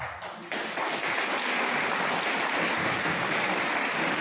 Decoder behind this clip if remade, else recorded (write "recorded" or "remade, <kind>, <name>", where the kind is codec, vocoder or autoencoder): recorded